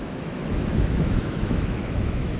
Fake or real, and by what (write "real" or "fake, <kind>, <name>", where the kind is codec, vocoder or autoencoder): fake, autoencoder, DAC-VAE